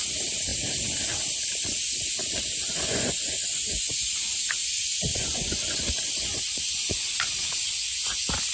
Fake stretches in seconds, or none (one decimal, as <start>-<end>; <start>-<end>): 2.6-4.0; 4.6-7.2